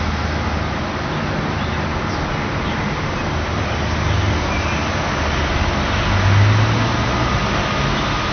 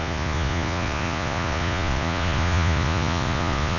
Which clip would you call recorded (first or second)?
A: first